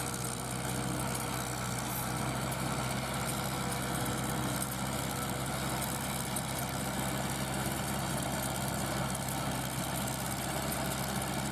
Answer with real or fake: real